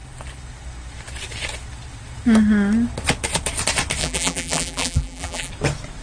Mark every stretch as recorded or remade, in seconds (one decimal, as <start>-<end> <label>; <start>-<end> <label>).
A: 0.0-4.0 recorded; 4.0-5.5 remade; 5.5-6.0 recorded